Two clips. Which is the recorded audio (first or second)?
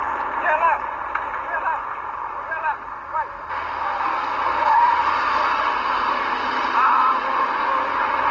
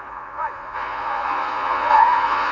first